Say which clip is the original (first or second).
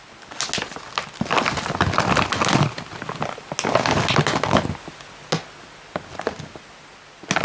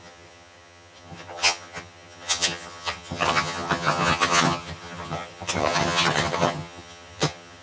first